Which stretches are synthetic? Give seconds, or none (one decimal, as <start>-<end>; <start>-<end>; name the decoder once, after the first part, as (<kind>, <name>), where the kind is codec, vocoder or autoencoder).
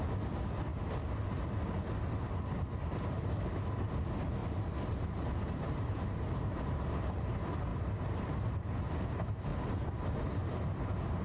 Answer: 4.4-6.9 (vocoder, BigVGAN v2); 7.7-8.8; 9.5-10.5